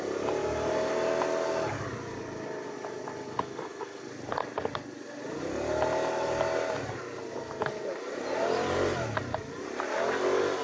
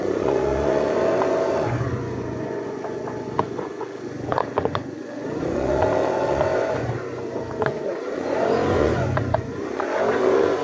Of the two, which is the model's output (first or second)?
second